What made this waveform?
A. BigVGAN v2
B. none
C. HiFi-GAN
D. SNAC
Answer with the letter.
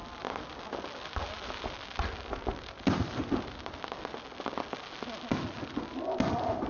B